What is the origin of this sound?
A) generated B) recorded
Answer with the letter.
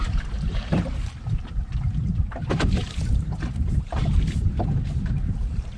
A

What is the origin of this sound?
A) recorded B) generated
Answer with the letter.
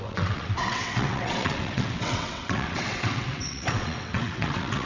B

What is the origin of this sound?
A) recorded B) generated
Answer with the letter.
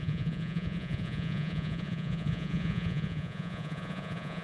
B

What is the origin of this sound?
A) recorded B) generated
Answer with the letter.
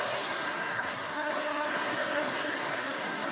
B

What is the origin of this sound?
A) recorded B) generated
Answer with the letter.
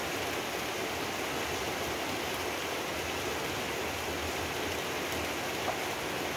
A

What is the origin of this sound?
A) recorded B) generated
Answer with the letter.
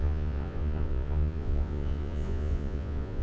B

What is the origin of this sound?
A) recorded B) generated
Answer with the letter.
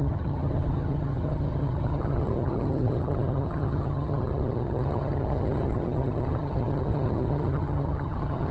B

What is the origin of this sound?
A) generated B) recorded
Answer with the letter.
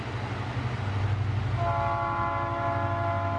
B